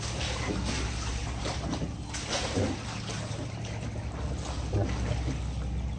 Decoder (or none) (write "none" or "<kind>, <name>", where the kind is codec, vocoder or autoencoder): none